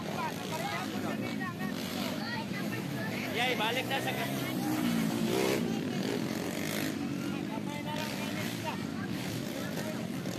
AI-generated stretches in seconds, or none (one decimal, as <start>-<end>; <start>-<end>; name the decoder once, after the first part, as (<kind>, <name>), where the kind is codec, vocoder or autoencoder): 1.9-4.3 (autoencoder, DAC-VAE); 8.9-9.5